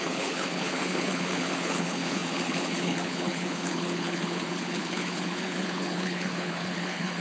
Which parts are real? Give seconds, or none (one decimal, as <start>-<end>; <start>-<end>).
none

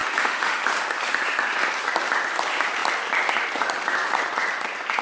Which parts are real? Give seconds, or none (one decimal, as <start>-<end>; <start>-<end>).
0.6-5.0